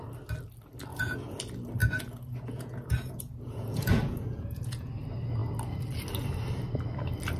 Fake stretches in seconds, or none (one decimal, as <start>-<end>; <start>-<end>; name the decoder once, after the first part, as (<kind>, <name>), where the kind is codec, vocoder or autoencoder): 0.9-1.4 (vocoder, Vocos); 1.8-4.9